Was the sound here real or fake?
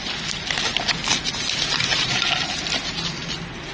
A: real